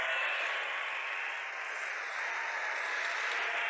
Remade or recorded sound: recorded